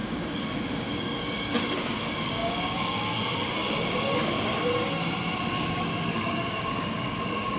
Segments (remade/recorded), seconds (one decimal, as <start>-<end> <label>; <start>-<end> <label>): 0.0-4.5 remade; 4.5-5.5 recorded; 5.5-7.6 remade